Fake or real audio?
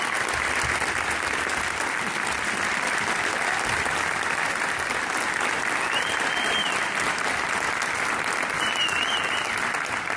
fake